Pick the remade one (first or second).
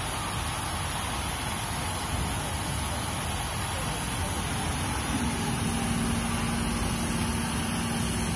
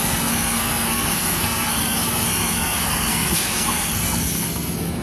second